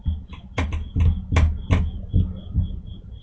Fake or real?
real